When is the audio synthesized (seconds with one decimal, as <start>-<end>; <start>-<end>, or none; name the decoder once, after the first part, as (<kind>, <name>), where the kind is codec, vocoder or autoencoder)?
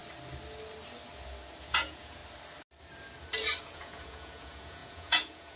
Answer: 1.6-2.2 (vocoder, Vocos); 3.6-5.6